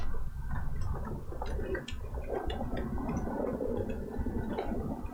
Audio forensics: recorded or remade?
recorded